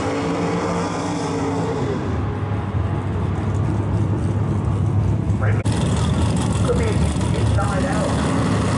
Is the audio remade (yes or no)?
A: no